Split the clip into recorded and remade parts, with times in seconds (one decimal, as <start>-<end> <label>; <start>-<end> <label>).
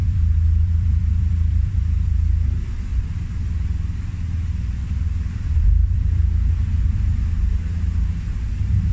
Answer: 0.0-3.0 remade; 3.0-4.8 recorded; 4.8-6.2 remade; 6.2-8.9 recorded